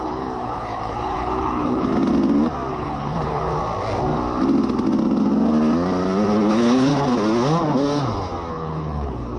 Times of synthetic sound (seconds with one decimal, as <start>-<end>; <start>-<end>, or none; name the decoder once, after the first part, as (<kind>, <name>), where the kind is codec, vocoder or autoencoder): 0.0-1.9 (codec, HILCodec); 2.7-3.5; 6.5-6.9; 8.5-9.4